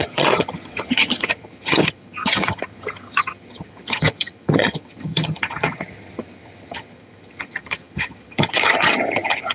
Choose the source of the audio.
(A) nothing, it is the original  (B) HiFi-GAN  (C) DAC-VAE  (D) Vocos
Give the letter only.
B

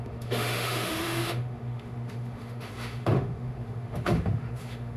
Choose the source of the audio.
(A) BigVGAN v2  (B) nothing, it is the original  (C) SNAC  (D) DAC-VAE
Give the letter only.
D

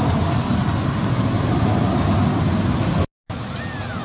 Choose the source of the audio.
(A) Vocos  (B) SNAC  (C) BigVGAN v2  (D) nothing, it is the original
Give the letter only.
D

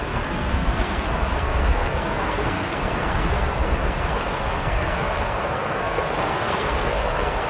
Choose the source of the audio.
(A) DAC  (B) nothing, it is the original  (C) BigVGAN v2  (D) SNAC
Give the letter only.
D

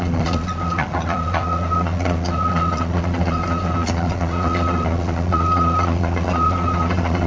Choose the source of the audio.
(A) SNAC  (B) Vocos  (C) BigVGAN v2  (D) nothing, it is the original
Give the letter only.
B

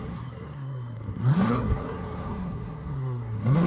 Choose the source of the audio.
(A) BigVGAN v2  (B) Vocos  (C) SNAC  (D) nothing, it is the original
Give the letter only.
C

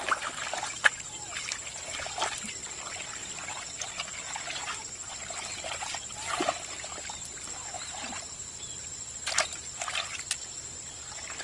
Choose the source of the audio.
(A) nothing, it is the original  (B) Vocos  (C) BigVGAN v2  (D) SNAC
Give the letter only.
C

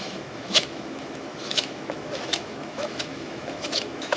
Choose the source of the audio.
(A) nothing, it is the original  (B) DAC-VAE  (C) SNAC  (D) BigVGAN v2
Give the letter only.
B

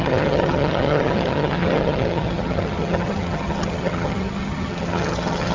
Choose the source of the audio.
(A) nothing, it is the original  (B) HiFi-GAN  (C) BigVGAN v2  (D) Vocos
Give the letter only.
B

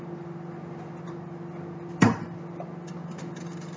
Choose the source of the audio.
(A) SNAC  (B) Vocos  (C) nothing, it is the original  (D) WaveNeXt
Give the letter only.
C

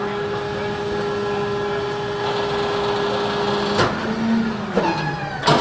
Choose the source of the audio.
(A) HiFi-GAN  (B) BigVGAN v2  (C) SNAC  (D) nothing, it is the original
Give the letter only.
D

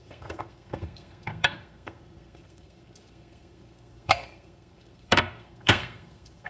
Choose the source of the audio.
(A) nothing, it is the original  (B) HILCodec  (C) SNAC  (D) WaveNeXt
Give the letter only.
C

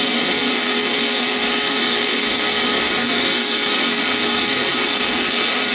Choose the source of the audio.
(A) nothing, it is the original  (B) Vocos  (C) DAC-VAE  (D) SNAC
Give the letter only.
D